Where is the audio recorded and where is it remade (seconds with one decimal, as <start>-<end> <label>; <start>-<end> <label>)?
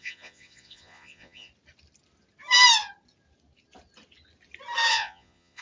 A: 0.0-1.5 remade; 1.5-4.9 recorded; 4.9-5.6 remade